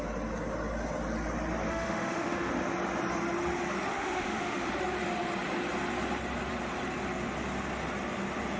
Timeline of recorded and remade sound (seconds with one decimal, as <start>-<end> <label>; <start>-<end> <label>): 0.0-1.7 recorded; 1.7-2.5 remade; 2.5-3.9 recorded; 3.9-4.7 remade; 4.7-8.6 recorded